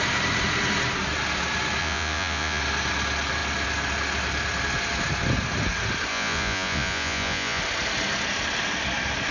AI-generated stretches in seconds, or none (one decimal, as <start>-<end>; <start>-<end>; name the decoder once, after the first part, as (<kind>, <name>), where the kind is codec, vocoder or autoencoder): 1.8-2.6 (vocoder, Vocos); 6.1-7.6